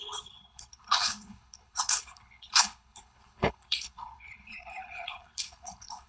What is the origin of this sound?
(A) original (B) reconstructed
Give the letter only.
B